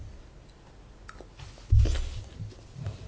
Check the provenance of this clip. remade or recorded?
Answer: recorded